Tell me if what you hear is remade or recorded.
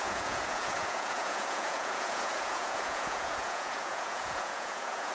remade